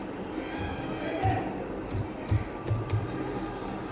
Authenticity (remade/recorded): recorded